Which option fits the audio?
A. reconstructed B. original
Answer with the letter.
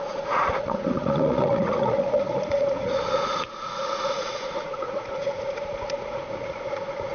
A